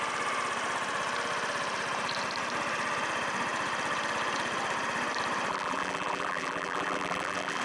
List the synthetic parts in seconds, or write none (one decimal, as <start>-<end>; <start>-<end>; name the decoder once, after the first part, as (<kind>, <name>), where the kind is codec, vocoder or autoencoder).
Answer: 5.5-7.6 (vocoder, BigVGAN v2)